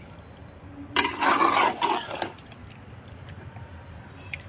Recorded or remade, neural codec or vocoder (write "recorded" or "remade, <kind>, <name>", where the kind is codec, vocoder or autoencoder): remade, vocoder, BigVGAN v2